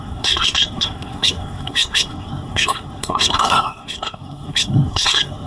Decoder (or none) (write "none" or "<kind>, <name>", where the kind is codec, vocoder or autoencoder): codec, SNAC